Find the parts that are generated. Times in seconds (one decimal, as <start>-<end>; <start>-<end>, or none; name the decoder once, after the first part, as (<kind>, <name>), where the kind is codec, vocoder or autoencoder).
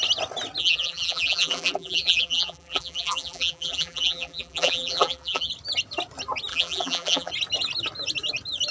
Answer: 0.6-5.5 (vocoder, BigVGAN v2); 6.5-7.3